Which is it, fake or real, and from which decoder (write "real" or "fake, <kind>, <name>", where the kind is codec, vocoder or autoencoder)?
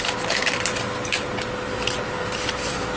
real